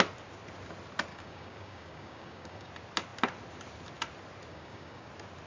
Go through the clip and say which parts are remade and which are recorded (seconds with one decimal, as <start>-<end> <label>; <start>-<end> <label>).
0.0-1.1 recorded; 1.1-2.7 remade; 2.7-4.5 recorded; 4.5-5.1 remade; 5.1-5.5 recorded